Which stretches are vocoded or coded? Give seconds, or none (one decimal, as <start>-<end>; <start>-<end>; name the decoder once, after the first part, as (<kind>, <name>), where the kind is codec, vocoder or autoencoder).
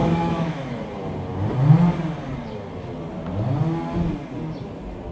0.0-0.7 (autoencoder, DAC-VAE)